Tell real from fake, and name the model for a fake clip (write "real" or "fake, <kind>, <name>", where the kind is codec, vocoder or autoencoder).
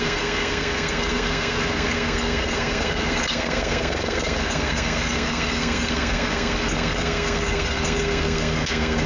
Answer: fake, codec, SNAC